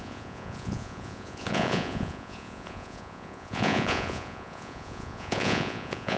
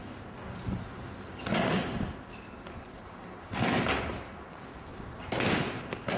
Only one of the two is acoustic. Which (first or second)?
second